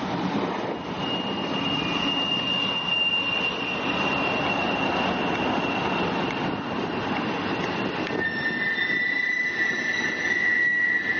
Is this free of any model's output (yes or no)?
yes